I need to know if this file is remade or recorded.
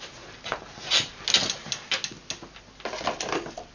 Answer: recorded